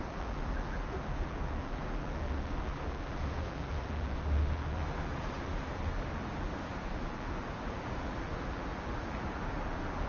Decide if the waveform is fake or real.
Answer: fake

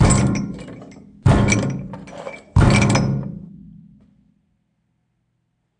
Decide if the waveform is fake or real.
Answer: real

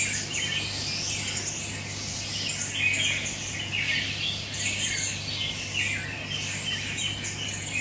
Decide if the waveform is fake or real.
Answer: real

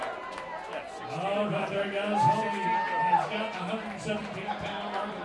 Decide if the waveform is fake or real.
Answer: real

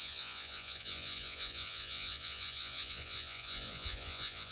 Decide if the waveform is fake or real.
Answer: fake